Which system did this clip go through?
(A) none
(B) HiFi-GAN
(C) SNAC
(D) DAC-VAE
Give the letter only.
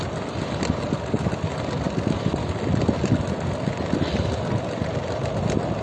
A